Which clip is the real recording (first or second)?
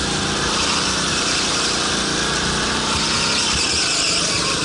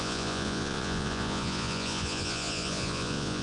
first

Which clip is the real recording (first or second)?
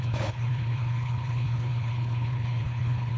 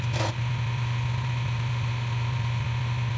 second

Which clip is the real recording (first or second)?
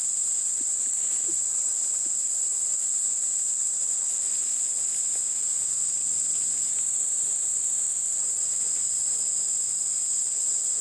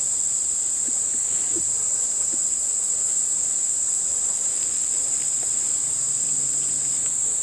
first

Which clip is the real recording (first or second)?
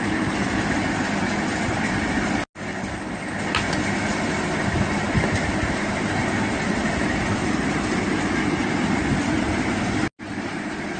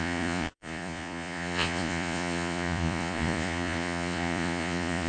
first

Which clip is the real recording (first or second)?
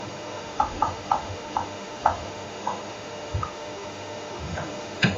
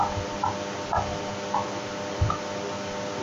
second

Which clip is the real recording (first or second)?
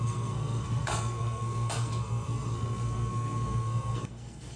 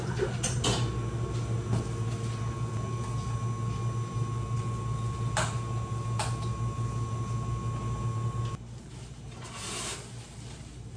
second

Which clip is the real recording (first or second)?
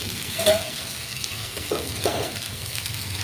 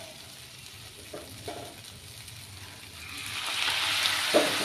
second